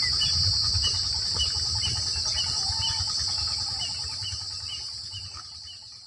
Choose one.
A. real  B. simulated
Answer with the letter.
A